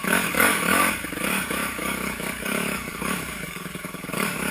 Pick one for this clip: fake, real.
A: fake